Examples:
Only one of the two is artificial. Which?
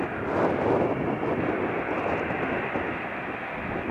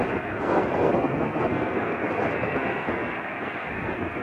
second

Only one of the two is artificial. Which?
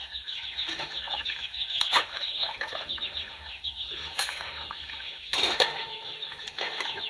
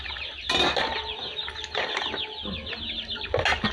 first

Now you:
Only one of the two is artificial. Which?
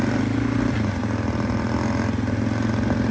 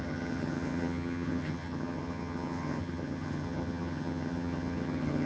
second